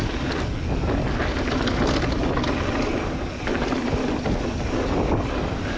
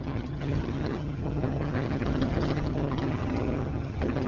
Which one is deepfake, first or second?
second